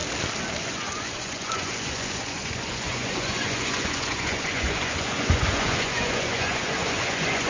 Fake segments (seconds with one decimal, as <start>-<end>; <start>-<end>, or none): 0.6-7.5